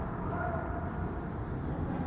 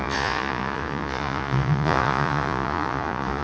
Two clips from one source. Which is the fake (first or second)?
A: second